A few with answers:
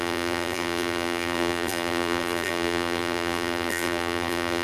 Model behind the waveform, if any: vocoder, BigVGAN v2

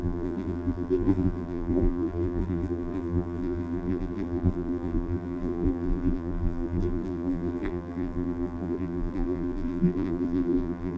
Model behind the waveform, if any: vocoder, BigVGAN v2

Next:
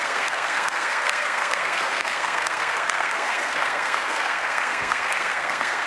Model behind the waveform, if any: codec, SNAC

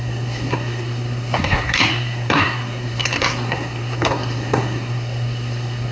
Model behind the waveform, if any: codec, SNAC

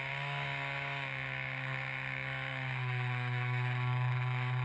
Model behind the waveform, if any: codec, DAC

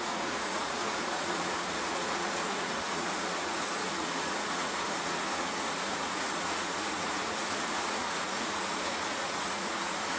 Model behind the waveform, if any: vocoder, Vocos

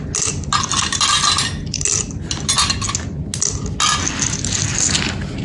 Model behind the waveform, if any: none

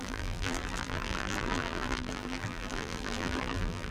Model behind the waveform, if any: vocoder, BigVGAN v2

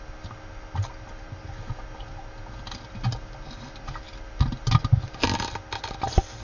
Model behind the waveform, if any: none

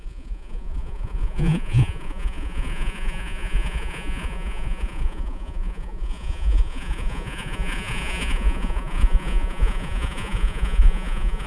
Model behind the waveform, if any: vocoder, Vocos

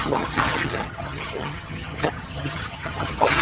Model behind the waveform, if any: vocoder, HiFi-GAN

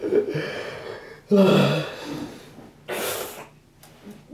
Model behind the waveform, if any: none